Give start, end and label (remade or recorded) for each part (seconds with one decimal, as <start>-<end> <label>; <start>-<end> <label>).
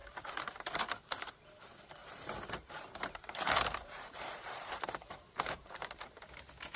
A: 0.0-1.3 remade; 1.3-2.0 recorded; 2.0-6.1 remade; 6.1-6.8 recorded